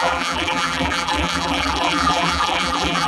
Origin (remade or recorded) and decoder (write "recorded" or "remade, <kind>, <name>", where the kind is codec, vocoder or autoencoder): remade, vocoder, BigVGAN v2